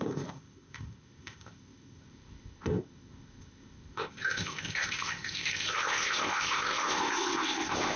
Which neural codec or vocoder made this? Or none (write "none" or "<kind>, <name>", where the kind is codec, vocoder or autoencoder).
codec, ZipCodec